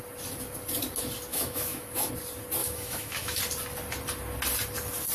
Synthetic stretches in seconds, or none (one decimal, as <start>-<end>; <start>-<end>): 1.3-2.1; 2.6-3.4